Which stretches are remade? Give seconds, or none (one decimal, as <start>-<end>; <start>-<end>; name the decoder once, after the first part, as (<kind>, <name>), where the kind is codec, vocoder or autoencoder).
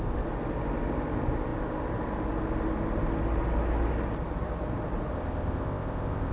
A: 5.1-6.3 (codec, ZipCodec)